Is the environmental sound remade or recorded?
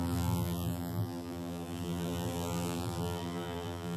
remade